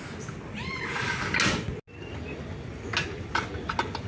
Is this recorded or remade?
recorded